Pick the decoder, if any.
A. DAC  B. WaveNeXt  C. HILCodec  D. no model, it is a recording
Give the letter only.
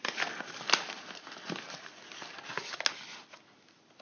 D